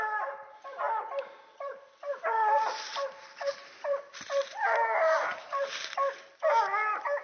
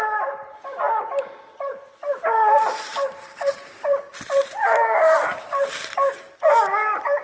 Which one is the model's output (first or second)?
second